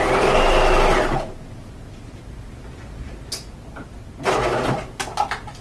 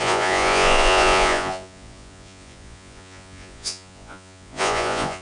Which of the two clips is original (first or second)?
first